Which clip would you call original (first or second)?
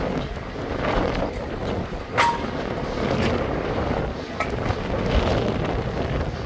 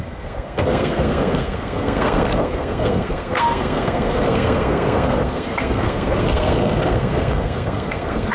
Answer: first